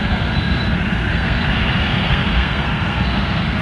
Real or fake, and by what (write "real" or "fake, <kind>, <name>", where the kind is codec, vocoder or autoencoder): fake, codec, SNAC